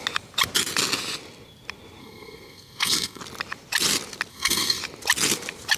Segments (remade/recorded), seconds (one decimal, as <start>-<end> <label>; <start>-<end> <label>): 0.0-2.0 recorded; 2.0-3.2 remade; 3.2-4.3 recorded; 4.3-4.8 remade; 4.8-5.8 recorded

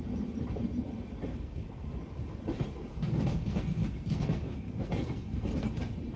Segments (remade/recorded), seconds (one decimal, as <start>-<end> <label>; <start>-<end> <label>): 0.0-1.3 recorded; 1.3-1.9 remade; 1.9-2.9 recorded; 2.9-5.7 remade; 5.7-6.2 recorded

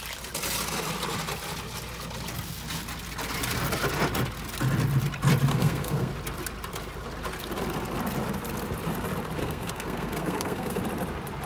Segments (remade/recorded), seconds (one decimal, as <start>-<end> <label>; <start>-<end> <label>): 0.0-5.5 recorded; 5.5-6.1 remade; 6.1-9.4 recorded; 9.4-10.8 remade; 10.8-11.5 recorded

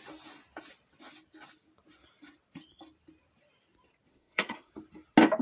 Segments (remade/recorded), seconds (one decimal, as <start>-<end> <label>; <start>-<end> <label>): 0.0-4.1 recorded; 4.1-4.7 remade; 4.7-5.4 recorded

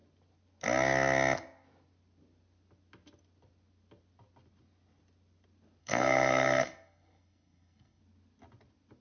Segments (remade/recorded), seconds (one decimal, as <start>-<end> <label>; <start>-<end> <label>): 0.0-5.8 recorded; 5.8-8.0 remade; 8.0-9.0 recorded

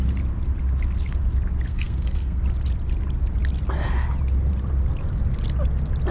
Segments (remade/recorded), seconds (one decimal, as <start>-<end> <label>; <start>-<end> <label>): 0.0-1.7 recorded; 1.7-2.4 remade; 2.4-6.1 recorded

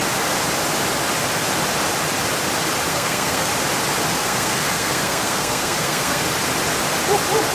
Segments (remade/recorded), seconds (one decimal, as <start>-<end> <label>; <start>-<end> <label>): 0.0-2.9 recorded; 2.9-3.5 remade; 3.5-4.2 recorded; 4.2-6.2 remade; 6.2-7.5 recorded

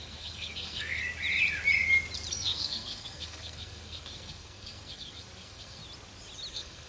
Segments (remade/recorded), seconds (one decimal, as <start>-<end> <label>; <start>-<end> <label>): 0.0-1.0 remade; 1.0-2.3 recorded; 2.3-5.8 remade; 5.8-6.5 recorded; 6.5-6.9 remade